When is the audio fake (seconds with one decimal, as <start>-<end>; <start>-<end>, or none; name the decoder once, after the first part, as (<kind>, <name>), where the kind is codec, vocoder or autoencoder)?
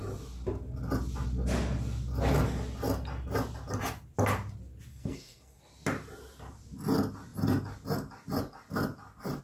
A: 4.9-5.6 (codec, SNAC)